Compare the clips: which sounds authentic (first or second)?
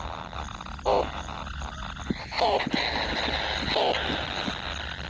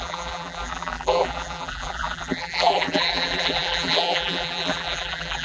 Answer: first